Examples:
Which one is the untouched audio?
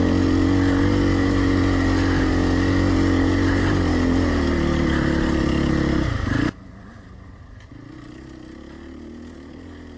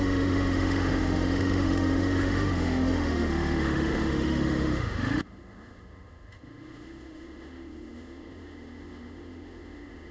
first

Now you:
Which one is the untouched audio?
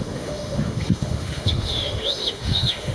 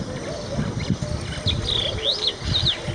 second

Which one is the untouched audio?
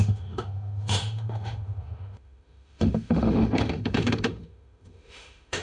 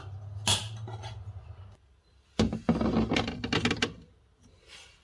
second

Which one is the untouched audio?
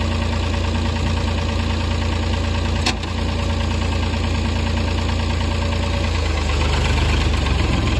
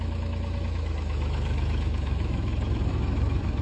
first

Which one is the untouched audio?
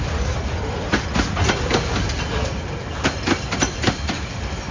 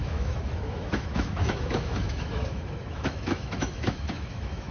first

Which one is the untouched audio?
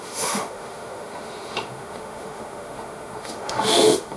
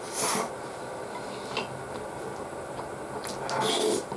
second